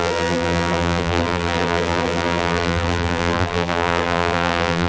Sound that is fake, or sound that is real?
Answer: fake